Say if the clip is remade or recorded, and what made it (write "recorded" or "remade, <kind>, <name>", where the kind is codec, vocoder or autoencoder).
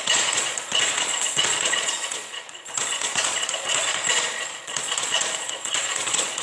remade, vocoder, Vocos